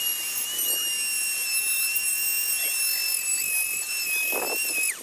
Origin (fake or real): real